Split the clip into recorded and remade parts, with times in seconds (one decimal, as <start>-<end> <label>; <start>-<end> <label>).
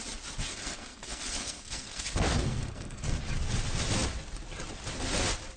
0.0-0.5 recorded; 0.5-3.2 remade; 3.2-5.6 recorded